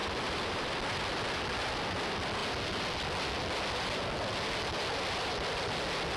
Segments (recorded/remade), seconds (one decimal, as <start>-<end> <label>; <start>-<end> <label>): 0.0-0.7 remade; 0.7-6.2 recorded